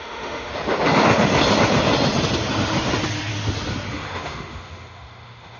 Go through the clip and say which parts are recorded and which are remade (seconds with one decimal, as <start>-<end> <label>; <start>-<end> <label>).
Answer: 0.0-0.5 remade; 0.5-3.9 recorded; 3.9-5.6 remade